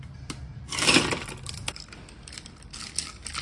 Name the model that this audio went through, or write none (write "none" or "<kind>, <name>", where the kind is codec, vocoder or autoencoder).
vocoder, BigVGAN v2